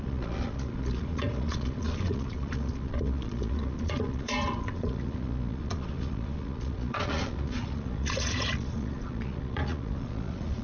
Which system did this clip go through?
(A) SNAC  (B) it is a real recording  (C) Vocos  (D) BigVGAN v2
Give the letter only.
C